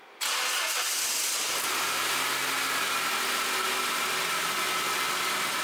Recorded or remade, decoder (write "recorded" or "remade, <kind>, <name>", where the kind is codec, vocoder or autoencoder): recorded